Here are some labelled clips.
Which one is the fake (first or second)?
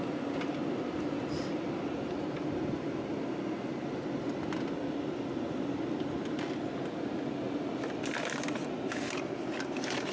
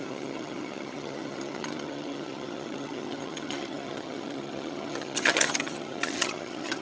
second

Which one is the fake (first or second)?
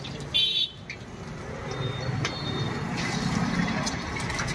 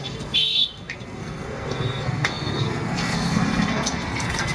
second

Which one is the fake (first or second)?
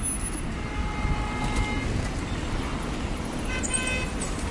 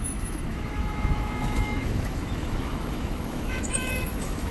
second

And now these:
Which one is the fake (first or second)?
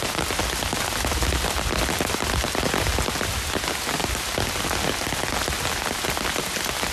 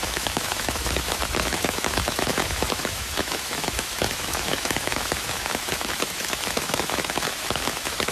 second